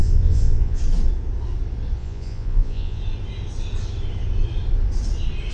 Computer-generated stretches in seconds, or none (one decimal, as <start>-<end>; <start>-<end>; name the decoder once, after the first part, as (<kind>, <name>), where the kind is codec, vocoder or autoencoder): 0.0-0.8 (vocoder, Vocos); 2.0-3.0